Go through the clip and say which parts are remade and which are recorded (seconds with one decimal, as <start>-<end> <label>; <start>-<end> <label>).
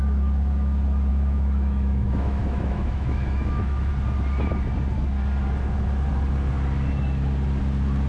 0.0-1.1 recorded; 1.1-3.9 remade; 3.9-8.1 recorded